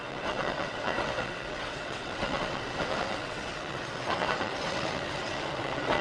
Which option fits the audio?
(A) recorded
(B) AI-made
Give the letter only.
B